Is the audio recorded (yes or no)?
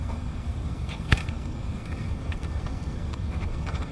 no